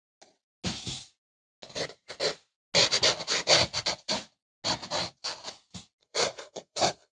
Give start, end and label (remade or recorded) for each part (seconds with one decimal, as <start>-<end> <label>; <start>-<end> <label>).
0.0-6.0 recorded; 6.0-7.1 remade